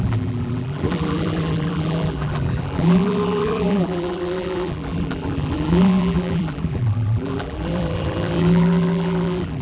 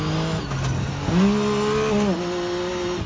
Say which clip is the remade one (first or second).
first